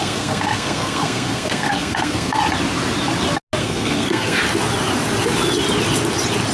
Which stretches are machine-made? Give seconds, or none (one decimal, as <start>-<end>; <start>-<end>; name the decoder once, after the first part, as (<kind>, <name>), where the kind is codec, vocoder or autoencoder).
0.0-2.4 (codec, SNAC); 3.6-4.4